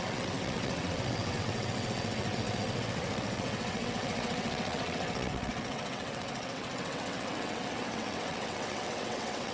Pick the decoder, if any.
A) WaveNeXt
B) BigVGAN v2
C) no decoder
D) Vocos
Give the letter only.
A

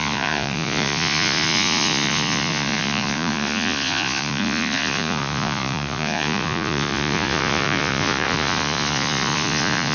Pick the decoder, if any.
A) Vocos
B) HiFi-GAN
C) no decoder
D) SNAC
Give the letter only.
A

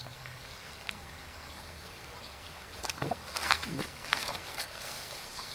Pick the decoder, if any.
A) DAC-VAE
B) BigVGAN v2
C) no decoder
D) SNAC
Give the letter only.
D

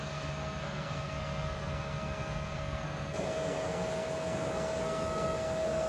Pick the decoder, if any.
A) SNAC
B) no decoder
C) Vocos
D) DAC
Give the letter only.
A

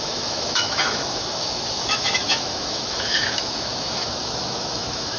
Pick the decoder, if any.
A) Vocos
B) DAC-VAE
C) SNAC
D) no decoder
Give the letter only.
B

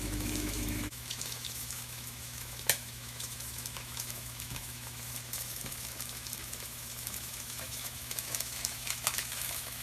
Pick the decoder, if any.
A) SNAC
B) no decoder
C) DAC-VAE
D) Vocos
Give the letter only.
C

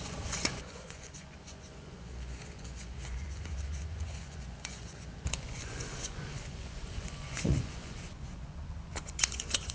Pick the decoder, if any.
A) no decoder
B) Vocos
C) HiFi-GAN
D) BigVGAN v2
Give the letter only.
B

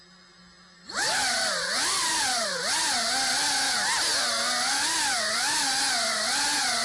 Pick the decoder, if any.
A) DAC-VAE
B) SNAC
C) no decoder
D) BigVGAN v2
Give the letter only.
C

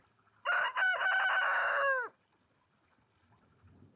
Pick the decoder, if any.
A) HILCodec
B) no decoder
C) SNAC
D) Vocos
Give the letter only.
B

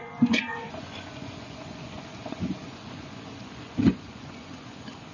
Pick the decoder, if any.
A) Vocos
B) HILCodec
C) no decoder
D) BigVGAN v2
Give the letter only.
A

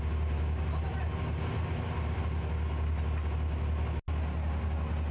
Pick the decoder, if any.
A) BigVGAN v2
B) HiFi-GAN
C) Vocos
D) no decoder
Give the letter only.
D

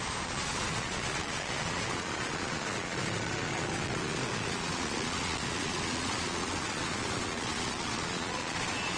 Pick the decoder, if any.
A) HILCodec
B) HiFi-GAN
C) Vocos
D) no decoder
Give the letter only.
C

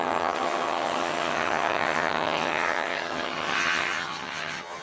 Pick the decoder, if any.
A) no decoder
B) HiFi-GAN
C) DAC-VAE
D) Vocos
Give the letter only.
B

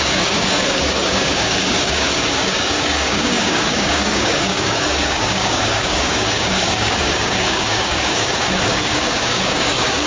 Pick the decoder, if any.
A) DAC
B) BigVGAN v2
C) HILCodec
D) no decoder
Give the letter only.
A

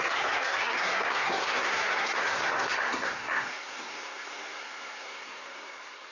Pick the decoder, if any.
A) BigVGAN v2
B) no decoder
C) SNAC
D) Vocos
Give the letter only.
C